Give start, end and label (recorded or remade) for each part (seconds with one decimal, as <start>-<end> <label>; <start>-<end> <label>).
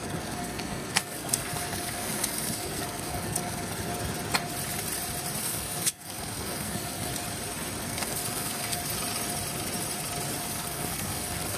0.0-3.9 remade; 3.9-5.4 recorded; 5.4-7.1 remade; 7.1-7.8 recorded; 7.8-8.8 remade; 8.8-10.5 recorded; 10.5-11.6 remade